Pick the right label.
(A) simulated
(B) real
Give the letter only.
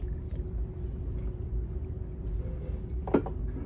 B